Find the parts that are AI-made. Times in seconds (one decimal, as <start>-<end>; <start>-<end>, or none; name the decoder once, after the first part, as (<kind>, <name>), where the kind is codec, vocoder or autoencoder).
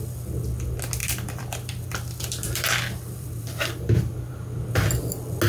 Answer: 1.0-4.3 (vocoder, BigVGAN v2)